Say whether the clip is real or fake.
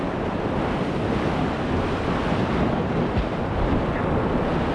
real